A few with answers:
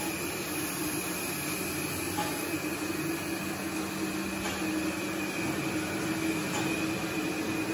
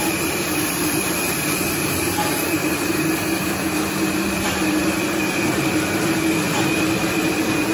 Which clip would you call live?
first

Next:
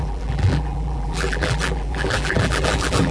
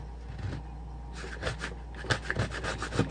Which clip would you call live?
second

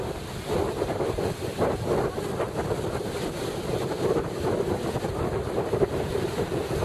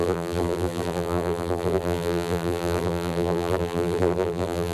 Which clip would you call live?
first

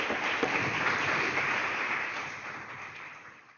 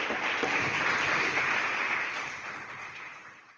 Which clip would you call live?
second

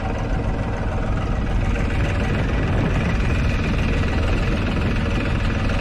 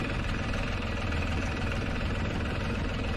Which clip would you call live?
first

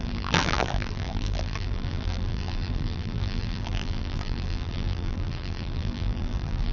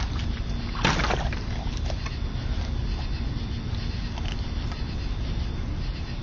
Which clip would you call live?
second